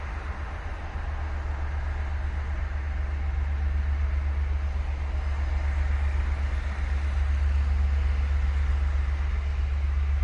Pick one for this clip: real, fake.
real